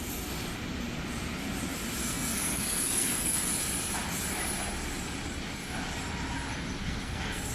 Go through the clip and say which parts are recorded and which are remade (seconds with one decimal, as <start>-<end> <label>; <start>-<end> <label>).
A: 0.0-2.0 recorded; 2.0-3.5 remade; 3.5-6.8 recorded; 6.8-7.5 remade